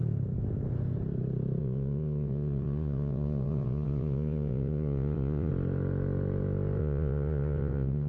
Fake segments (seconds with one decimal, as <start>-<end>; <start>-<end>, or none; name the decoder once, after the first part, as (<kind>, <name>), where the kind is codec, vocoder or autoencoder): 1.6-5.5 (vocoder, Vocos); 6.8-8.1

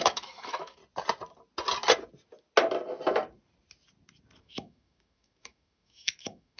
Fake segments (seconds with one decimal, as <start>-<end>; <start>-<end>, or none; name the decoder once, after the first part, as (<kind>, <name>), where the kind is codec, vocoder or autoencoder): 0.0-0.8 (autoencoder, DAC-VAE); 4.4-6.6

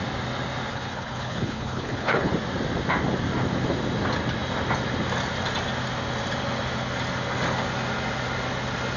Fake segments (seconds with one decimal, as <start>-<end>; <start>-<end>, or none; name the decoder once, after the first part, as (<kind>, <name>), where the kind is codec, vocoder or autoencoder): 0.7-2.3 (codec, HILCodec)

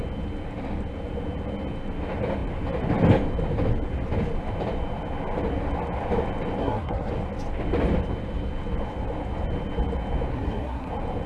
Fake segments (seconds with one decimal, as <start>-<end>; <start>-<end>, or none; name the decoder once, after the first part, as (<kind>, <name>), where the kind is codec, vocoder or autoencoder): 6.6-7.1 (codec, SNAC); 10.3-10.9

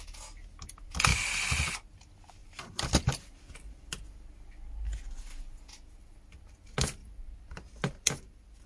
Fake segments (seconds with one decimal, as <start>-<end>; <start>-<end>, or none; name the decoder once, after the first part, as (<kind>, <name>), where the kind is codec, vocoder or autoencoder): 2.4-4.1 (vocoder, BigVGAN v2); 7.0-8.7

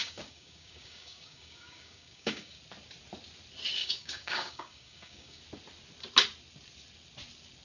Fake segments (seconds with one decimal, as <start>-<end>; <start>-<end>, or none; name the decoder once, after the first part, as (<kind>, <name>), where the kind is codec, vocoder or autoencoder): 0.0-2.6 (codec, DAC); 3.8-5.4

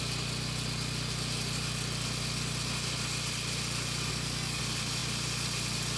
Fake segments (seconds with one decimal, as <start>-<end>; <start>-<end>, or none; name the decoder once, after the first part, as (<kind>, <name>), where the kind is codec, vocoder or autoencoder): 4.1-4.6 (codec, SNAC)

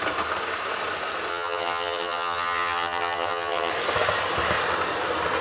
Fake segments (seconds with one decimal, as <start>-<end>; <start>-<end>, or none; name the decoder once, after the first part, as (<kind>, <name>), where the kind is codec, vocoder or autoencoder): 1.3-3.7 (vocoder, HiFi-GAN)